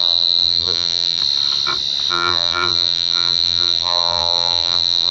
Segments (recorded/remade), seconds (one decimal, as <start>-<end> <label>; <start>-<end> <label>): 0.0-1.2 remade; 1.2-2.1 recorded; 2.1-5.1 remade